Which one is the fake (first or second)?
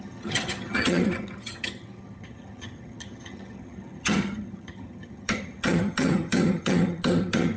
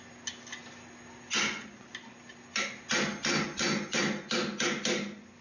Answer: first